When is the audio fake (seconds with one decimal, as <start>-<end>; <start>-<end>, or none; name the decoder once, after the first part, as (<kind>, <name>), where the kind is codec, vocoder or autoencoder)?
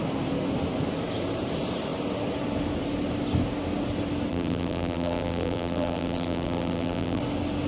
4.3-7.2 (vocoder, BigVGAN v2)